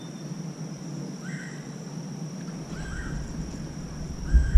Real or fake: real